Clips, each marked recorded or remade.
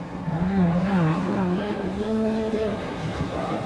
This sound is remade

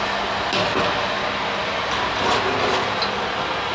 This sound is recorded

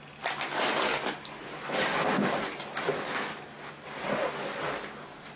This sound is recorded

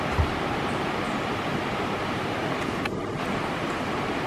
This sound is recorded